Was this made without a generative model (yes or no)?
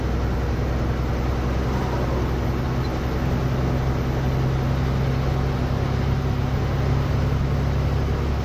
yes